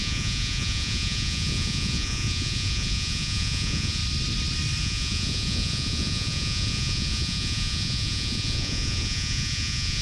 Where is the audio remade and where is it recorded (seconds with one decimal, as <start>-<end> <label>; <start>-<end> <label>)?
0.0-4.0 remade; 4.0-4.8 recorded; 4.8-10.0 remade